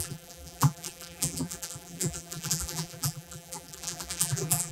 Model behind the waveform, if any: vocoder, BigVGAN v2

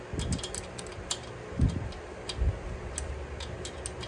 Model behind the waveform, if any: none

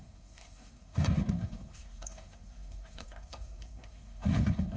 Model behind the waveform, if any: codec, SNAC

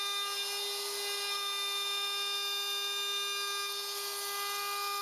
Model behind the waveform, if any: none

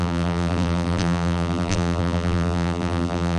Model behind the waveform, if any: vocoder, BigVGAN v2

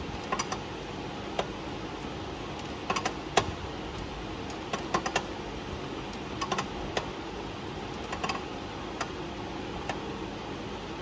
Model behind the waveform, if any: none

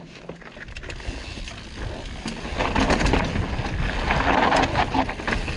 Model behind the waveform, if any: none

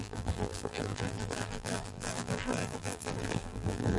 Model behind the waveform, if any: vocoder, BigVGAN v2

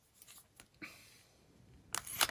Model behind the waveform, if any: none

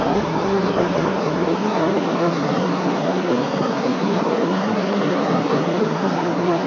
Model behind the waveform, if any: codec, SNAC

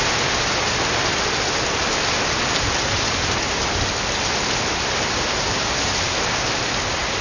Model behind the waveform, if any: none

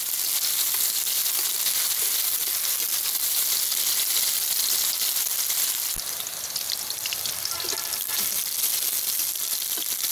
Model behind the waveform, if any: none